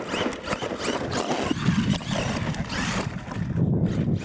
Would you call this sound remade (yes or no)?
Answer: no